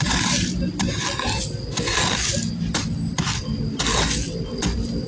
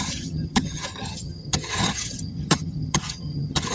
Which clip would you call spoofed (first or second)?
second